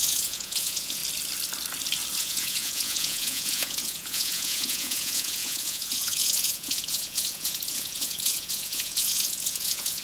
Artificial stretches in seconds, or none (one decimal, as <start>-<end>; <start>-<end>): 0.0-1.0; 2.2-10.0